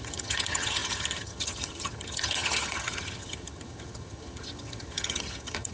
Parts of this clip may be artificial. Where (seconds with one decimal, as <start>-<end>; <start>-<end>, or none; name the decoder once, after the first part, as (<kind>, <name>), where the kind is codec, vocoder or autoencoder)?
0.0-5.7 (vocoder, HiFi-GAN)